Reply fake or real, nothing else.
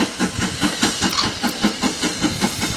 real